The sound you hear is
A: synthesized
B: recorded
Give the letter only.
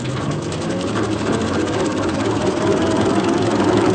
A